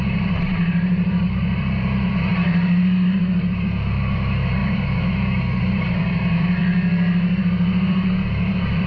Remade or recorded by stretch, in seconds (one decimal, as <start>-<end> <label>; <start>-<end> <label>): 0.0-6.6 remade; 6.6-7.4 recorded; 7.4-8.9 remade